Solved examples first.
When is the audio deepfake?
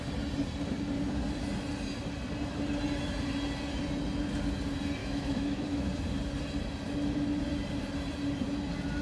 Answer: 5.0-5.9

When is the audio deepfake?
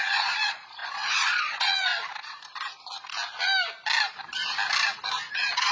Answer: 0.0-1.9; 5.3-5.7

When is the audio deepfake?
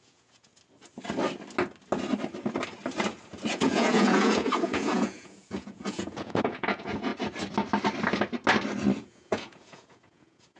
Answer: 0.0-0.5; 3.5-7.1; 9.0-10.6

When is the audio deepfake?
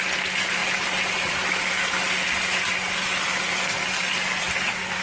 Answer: none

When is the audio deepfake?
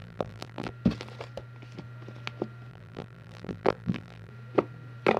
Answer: 0.0-0.7; 2.7-4.3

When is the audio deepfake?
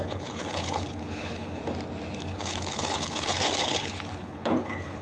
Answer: 0.0-1.6; 2.2-5.0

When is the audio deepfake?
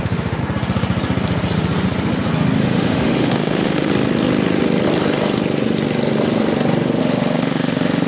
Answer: 0.0-0.4; 2.6-3.9; 7.0-8.1